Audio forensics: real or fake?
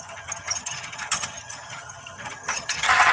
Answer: fake